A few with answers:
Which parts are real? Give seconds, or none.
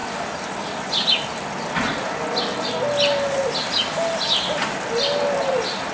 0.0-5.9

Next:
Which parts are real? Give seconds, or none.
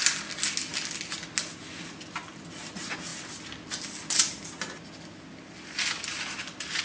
0.0-6.8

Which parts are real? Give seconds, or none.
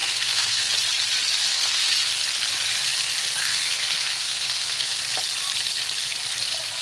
0.7-1.5; 2.1-3.4; 5.0-6.8